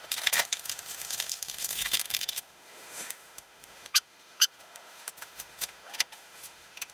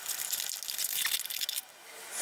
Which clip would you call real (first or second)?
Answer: second